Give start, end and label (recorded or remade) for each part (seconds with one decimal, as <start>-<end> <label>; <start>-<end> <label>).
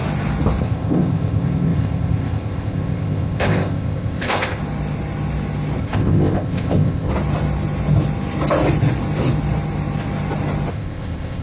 0.0-0.6 recorded; 0.6-4.6 remade; 4.6-5.8 recorded; 5.8-7.1 remade; 7.1-10.7 recorded; 10.7-11.4 remade